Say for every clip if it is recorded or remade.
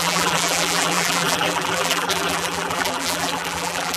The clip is remade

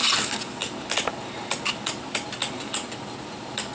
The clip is recorded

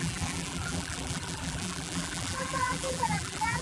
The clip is remade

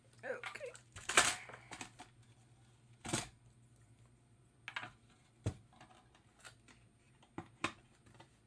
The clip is recorded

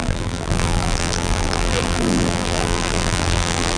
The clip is remade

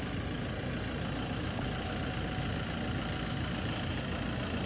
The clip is recorded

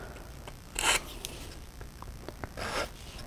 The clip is recorded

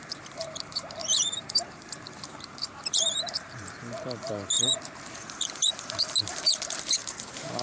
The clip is remade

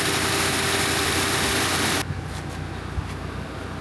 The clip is recorded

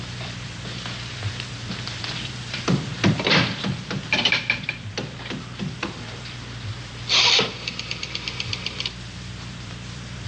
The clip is remade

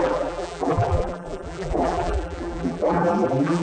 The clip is remade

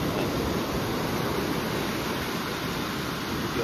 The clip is remade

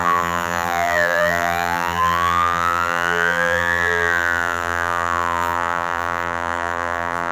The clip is remade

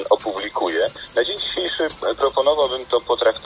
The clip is recorded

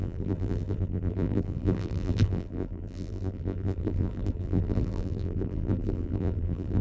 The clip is remade